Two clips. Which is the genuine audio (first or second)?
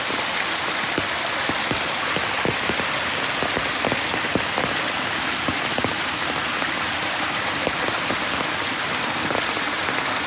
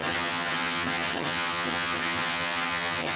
first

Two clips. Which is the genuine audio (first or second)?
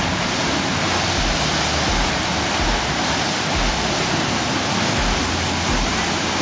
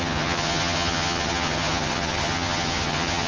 first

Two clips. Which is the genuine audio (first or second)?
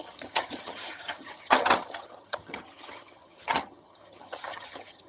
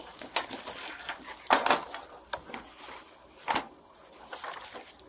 second